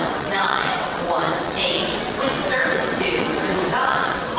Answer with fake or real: fake